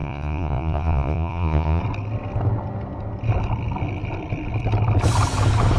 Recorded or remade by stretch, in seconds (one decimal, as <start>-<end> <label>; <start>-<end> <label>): 0.0-1.8 remade; 1.8-5.8 recorded